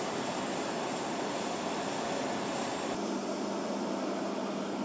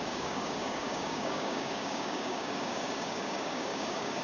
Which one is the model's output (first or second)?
second